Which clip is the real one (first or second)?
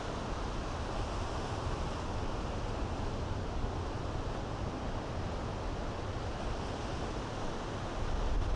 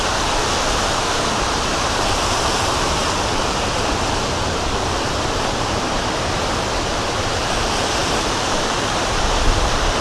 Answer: first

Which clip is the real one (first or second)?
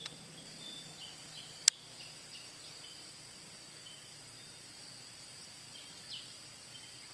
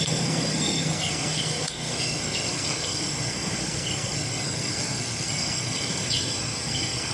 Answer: first